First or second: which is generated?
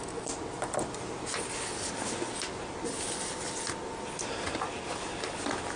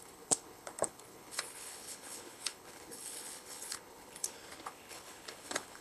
second